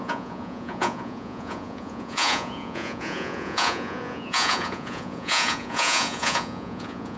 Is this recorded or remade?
remade